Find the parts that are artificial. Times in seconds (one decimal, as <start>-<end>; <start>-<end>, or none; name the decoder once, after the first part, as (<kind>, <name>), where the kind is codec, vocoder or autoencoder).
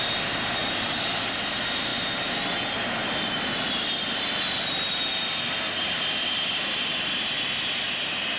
0.6-1.2 (vocoder, BigVGAN v2)